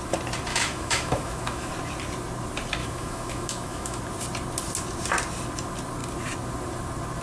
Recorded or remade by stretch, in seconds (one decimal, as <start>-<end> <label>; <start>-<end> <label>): 0.0-0.5 recorded; 0.5-1.7 remade; 1.7-2.8 recorded; 2.8-4.0 remade; 4.0-7.2 recorded